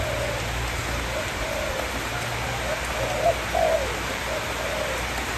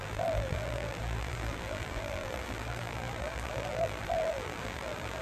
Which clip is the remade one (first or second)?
second